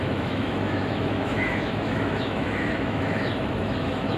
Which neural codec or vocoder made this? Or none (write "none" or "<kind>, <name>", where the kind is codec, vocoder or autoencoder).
autoencoder, DAC-VAE